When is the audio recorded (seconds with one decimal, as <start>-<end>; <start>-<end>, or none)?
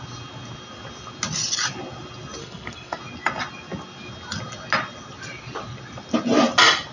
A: 0.0-2.4; 3.0-6.9